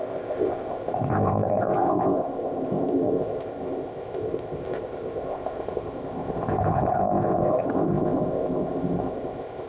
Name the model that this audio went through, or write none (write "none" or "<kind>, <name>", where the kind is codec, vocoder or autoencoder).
codec, ZipCodec